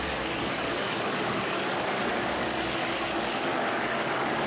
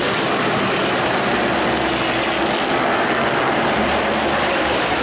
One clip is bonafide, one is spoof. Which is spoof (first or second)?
first